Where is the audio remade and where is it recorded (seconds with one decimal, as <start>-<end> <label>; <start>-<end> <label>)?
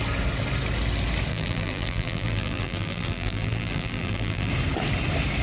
0.0-1.3 recorded; 1.3-4.5 remade; 4.5-5.4 recorded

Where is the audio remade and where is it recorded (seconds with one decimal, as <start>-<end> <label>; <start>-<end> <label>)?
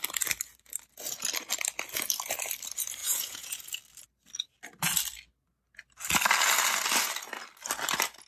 0.0-3.0 recorded; 3.0-3.6 remade; 3.6-8.3 recorded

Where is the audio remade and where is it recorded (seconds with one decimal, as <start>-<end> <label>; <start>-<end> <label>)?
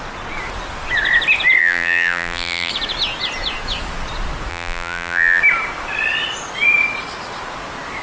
0.0-1.6 recorded; 1.6-2.7 remade; 2.7-4.5 recorded; 4.5-5.4 remade; 5.4-8.0 recorded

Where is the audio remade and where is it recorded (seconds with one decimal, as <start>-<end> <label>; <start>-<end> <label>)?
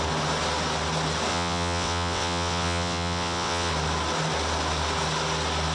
0.0-1.3 recorded; 1.3-3.7 remade; 3.7-5.7 recorded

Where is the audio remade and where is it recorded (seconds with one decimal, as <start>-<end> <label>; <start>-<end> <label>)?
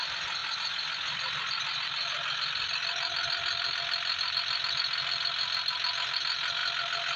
0.0-7.2 recorded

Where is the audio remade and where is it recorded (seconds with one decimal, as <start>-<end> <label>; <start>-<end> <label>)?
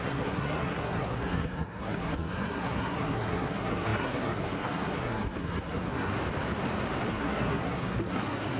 0.0-6.1 remade; 6.1-7.1 recorded; 7.1-8.6 remade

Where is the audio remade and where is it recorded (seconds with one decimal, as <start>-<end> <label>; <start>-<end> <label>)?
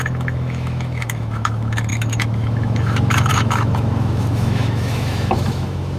0.0-6.0 remade